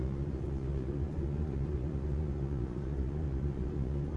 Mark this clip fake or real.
fake